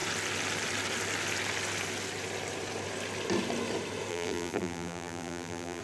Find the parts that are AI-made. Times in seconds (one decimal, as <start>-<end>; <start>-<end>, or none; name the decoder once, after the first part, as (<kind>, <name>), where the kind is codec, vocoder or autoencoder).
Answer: 4.1-5.8 (vocoder, BigVGAN v2)